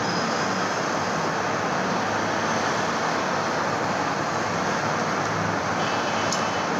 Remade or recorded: recorded